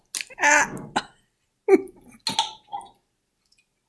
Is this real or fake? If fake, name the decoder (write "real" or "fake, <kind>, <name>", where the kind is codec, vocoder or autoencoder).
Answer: real